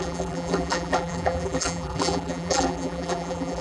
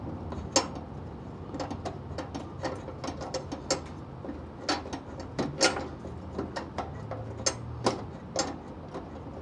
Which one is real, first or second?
second